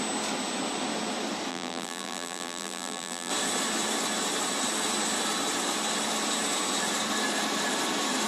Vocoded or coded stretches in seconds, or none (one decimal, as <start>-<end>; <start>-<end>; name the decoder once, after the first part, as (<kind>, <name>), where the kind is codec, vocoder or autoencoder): 1.5-3.3 (vocoder, BigVGAN v2)